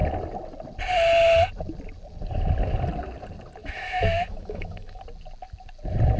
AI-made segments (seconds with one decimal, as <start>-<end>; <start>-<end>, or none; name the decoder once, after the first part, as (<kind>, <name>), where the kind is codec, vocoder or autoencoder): 3.6-5.0 (autoencoder, DAC-VAE)